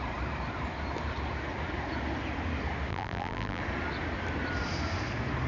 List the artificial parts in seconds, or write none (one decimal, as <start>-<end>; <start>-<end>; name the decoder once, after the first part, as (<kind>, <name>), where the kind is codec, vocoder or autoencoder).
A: 2.9-3.6 (vocoder, BigVGAN v2)